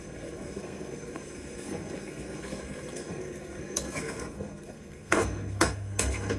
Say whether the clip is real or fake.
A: fake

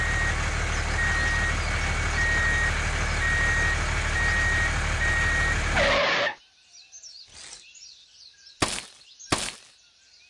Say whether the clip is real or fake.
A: real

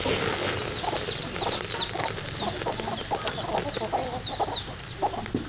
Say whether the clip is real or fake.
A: real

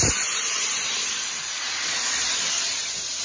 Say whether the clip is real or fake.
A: real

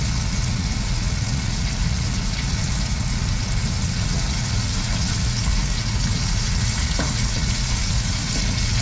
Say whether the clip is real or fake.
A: fake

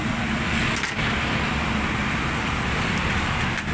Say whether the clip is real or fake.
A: real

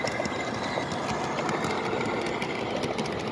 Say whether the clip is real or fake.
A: real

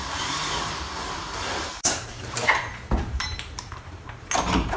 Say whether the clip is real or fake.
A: fake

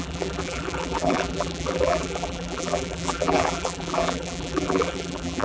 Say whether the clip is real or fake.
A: fake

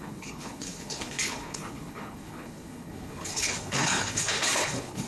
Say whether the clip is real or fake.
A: fake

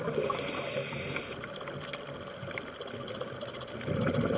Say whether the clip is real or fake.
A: real